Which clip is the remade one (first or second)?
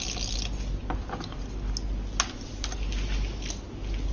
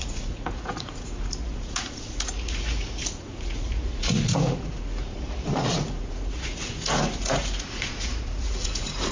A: second